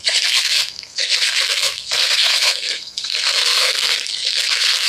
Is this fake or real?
fake